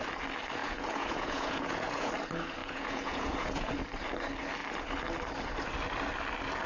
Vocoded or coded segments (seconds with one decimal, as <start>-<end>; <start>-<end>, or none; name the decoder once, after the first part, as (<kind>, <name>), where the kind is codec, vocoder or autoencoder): 0.6-2.1 (vocoder, Vocos); 2.6-3.7